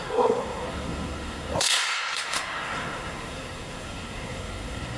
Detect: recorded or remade remade